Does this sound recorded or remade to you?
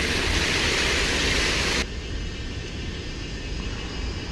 recorded